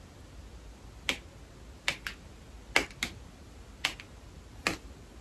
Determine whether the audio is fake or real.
real